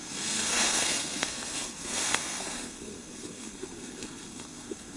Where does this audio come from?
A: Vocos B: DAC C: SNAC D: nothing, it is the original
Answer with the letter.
C